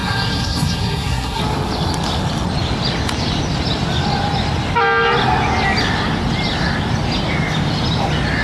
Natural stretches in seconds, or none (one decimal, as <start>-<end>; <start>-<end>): 1.4-8.4